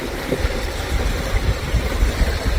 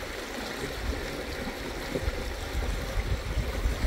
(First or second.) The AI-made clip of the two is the first